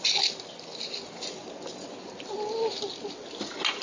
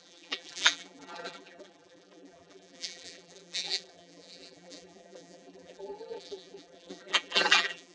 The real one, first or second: first